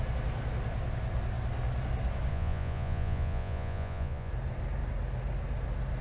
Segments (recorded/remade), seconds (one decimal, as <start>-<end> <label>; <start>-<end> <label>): 0.0-2.3 recorded; 2.3-4.3 remade; 4.3-6.0 recorded